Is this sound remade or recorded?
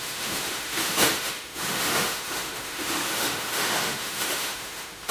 remade